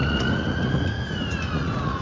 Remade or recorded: remade